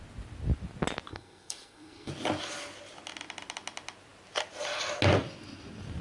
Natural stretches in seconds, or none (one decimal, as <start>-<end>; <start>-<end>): 0.0-1.1; 2.1-6.0